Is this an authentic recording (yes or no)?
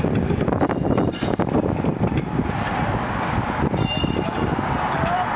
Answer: no